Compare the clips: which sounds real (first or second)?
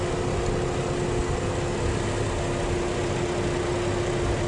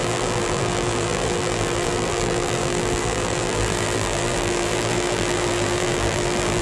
first